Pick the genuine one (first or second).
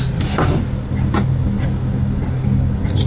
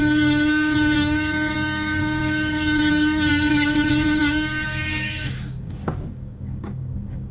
first